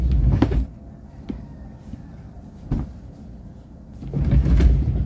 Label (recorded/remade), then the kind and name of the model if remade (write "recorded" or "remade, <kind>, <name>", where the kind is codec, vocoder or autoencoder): recorded